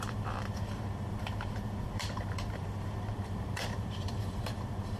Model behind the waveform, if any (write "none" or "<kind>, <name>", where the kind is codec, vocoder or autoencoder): vocoder, BigVGAN v2